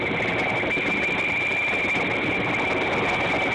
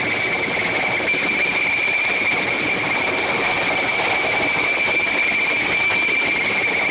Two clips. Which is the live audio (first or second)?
first